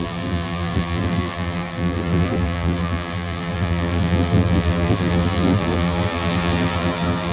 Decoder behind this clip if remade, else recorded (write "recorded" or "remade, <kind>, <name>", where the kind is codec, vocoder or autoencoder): remade, vocoder, BigVGAN v2